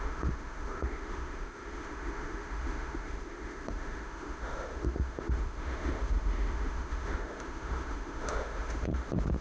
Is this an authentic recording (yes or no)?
no